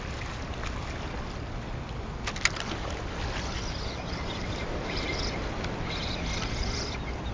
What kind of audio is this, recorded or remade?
recorded